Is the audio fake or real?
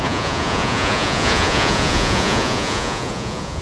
fake